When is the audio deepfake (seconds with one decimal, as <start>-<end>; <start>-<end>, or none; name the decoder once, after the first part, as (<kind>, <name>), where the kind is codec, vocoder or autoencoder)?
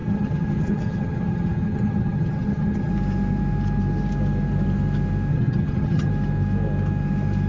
0.0-2.9 (vocoder, HiFi-GAN); 5.3-6.1